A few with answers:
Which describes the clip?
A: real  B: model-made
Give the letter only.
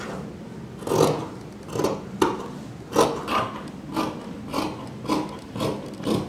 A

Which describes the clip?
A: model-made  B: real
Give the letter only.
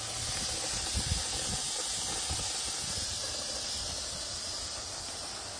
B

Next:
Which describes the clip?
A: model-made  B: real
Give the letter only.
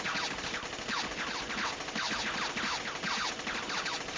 B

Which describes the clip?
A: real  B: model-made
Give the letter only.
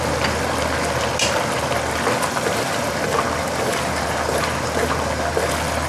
A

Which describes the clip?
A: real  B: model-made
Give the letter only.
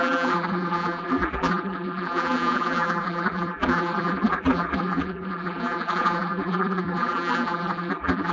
B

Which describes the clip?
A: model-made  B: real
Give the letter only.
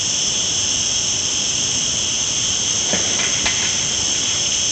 A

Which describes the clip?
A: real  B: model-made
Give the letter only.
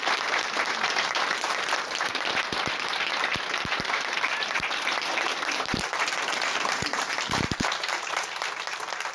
B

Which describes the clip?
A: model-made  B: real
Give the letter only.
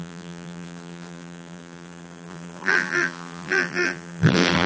A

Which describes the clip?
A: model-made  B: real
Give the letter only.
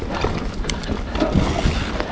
B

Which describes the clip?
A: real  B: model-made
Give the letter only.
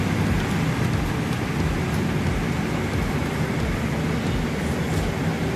A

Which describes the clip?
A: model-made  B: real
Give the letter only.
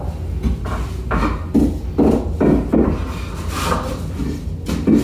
B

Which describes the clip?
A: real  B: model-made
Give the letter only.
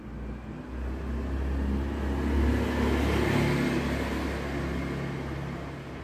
A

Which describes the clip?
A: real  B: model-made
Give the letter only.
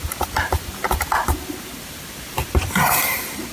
B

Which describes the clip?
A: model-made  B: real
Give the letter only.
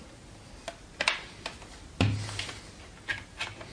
B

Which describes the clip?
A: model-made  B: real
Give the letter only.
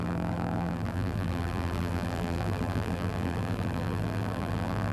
A